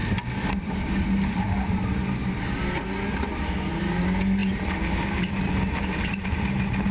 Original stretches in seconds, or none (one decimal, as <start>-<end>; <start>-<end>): 0.0-6.9